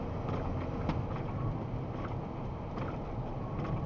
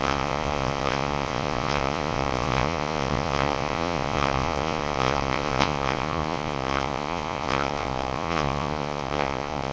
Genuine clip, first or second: first